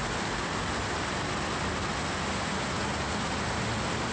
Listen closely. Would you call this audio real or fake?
real